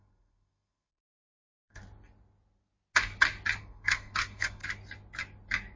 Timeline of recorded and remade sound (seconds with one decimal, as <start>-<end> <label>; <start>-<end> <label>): 0.0-1.8 remade; 1.8-3.6 recorded; 3.6-4.6 remade; 4.6-5.8 recorded